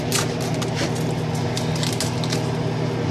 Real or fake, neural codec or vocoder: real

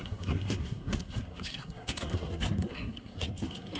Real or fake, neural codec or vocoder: fake, codec, SNAC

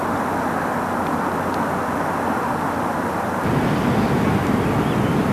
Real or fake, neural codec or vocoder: real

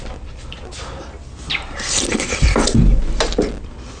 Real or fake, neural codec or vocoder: real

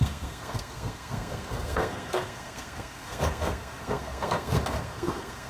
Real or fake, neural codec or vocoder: fake, codec, SNAC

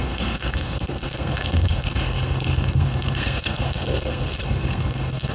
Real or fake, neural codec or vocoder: fake, codec, SNAC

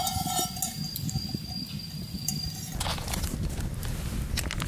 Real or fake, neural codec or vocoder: real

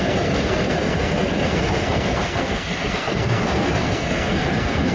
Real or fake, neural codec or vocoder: fake, codec, SNAC